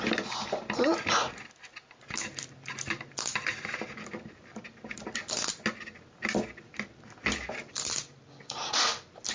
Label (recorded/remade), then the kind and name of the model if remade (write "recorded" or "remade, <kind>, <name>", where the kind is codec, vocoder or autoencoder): recorded